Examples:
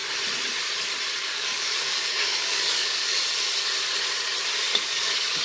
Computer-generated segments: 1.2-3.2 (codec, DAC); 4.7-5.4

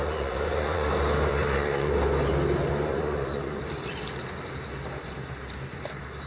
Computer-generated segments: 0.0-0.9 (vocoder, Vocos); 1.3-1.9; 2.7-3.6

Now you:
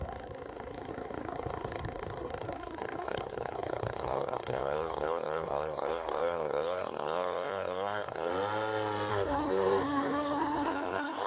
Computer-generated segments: 0.0-8.3 (codec, SNAC); 9.1-11.3

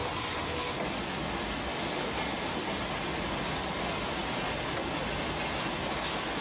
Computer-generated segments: none